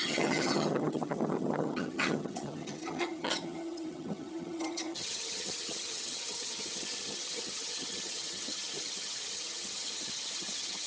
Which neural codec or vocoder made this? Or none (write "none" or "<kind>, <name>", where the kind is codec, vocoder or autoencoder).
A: vocoder, HiFi-GAN